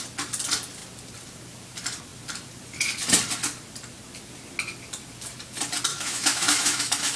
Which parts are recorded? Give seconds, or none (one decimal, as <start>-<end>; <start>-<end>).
0.0-5.9